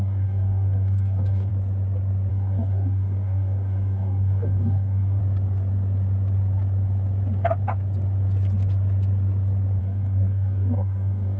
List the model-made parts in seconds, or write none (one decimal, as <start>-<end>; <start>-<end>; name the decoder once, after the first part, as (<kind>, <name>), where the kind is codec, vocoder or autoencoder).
0.0-1.5 (codec, DAC); 2.3-5.2; 9.8-11.4

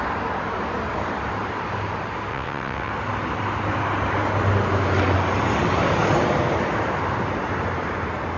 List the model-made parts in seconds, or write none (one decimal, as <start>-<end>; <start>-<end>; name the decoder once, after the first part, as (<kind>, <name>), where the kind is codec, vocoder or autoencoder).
2.3-2.9 (vocoder, WaveNeXt)

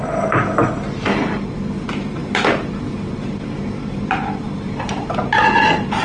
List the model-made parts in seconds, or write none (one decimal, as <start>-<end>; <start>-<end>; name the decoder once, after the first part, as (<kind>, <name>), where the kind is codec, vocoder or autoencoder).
none

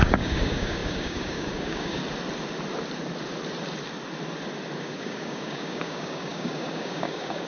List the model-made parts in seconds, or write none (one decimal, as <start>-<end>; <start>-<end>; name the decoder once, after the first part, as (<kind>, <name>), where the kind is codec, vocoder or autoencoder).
0.0-2.0 (codec, DAC); 4.8-7.5

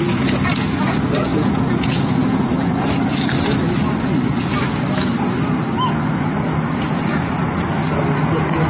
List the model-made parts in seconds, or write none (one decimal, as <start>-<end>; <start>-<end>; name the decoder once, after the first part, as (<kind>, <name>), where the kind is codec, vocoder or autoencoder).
1.3-2.9 (vocoder, Vocos)

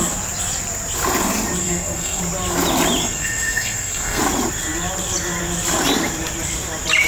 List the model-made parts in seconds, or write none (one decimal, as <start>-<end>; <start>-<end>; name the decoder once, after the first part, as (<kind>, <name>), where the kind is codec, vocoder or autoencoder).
1.6-2.2 (codec, SNAC); 3.0-4.2

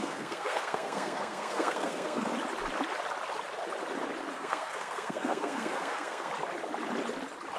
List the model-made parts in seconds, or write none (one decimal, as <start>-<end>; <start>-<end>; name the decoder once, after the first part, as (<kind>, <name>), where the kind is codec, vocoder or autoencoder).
0.0-2.3 (codec, SNAC); 4.3-6.3

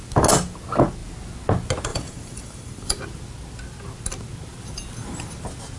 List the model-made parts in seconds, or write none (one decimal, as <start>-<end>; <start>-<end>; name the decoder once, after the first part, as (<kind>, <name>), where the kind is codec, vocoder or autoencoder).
1.9-3.0 (vocoder, BigVGAN v2)